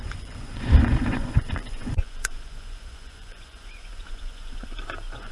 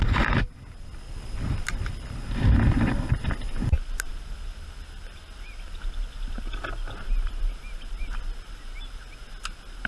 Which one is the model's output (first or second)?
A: first